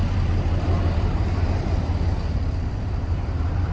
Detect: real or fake fake